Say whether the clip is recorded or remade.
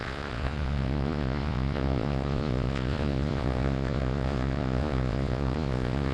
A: remade